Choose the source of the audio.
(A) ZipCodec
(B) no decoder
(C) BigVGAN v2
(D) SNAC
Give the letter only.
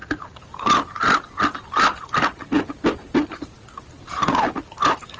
B